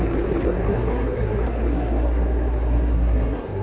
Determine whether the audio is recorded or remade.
remade